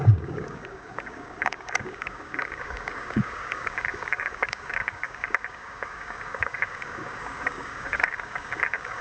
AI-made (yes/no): yes